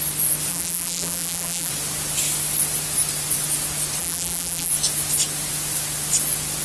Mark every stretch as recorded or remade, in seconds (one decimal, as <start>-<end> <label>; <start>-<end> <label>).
0.0-0.5 recorded; 0.5-1.7 remade; 1.7-4.0 recorded; 4.0-4.7 remade; 4.7-6.6 recorded